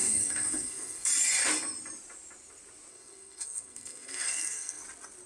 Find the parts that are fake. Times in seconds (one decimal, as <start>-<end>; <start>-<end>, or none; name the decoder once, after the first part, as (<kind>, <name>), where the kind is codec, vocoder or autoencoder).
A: 0.0-1.1 (codec, SNAC); 2.9-4.8